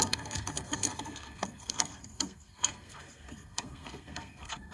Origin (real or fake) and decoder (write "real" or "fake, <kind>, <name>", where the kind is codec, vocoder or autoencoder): fake, codec, SNAC